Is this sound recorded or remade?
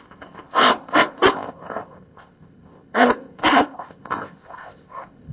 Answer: remade